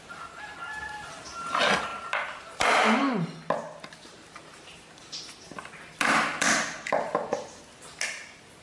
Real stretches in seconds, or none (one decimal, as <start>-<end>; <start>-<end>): 0.0-1.9; 2.4-8.6